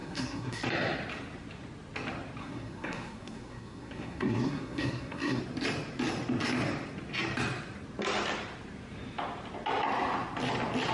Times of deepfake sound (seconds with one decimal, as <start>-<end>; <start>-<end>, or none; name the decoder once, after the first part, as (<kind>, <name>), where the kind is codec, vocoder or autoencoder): 0.0-0.6 (codec, SNAC); 2.4-5.4